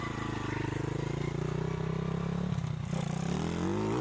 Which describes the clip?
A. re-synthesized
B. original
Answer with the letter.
B